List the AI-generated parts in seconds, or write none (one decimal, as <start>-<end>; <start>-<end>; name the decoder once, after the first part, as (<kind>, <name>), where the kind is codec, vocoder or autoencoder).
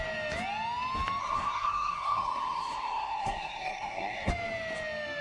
1.2-4.3 (codec, SNAC)